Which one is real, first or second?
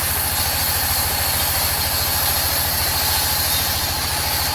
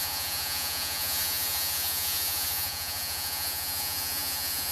first